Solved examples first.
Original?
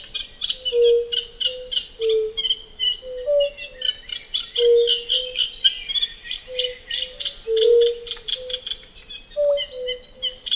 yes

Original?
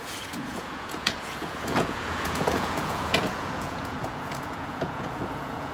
no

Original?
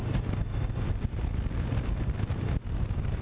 yes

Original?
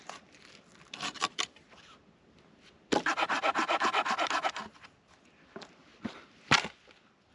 yes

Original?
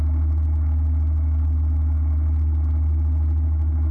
yes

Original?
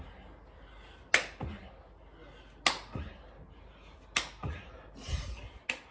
yes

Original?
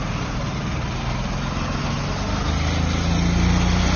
yes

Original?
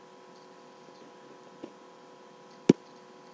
yes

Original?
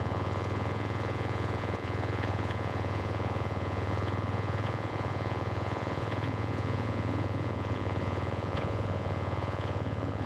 no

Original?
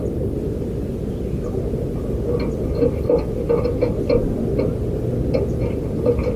yes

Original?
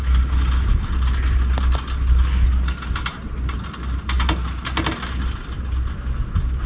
yes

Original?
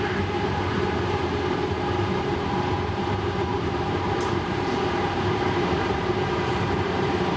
no